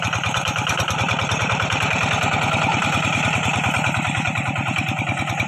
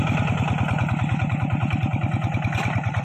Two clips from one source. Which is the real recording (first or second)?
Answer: second